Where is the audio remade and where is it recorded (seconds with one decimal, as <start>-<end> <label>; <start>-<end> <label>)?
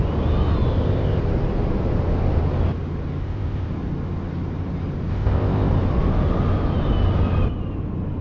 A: 0.0-0.7 recorded; 0.7-1.2 remade; 1.2-3.2 recorded; 3.2-3.7 remade; 3.7-5.1 recorded; 5.1-5.7 remade; 5.7-8.2 recorded